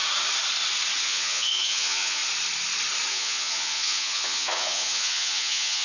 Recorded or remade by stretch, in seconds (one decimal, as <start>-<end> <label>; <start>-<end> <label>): 0.0-1.0 recorded; 1.0-2.2 remade; 2.2-3.1 recorded; 3.1-5.8 remade